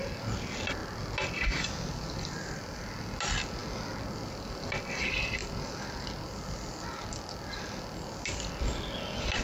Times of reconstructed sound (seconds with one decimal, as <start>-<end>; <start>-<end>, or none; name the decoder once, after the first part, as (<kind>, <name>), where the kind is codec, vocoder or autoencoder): none